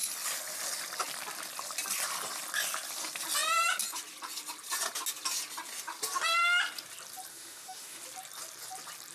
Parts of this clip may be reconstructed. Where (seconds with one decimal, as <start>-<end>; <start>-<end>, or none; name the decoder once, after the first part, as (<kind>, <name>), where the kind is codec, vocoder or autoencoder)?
7.3-8.0 (autoencoder, DAC-VAE)